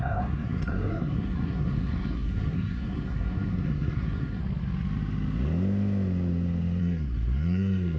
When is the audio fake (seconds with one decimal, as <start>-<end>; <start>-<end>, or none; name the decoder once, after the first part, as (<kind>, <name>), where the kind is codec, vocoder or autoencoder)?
0.0-4.4 (codec, SNAC); 6.8-8.0